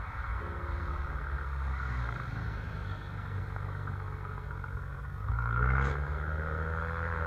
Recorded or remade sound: remade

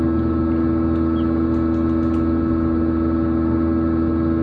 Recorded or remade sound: recorded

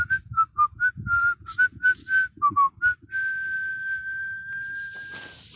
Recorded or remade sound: recorded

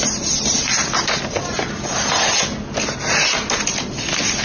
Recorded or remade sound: recorded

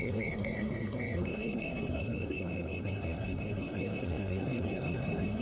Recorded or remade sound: remade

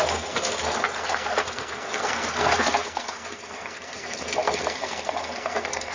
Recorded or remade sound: remade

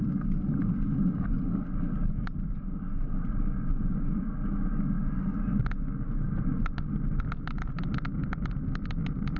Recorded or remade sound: recorded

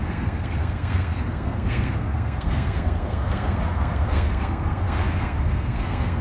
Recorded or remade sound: remade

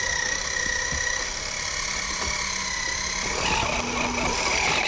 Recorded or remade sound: recorded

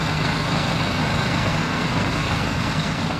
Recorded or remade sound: remade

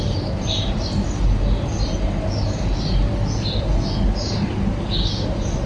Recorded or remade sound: recorded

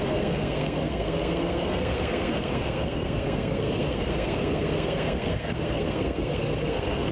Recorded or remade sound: remade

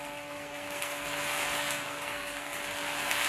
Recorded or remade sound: remade